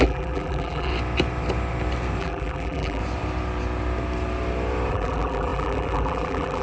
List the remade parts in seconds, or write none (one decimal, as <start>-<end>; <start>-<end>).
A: 0.0-0.9; 2.2-3.0; 4.9-6.6